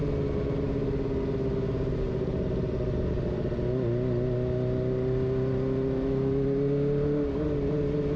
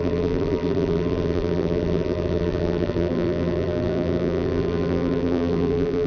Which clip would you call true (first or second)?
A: first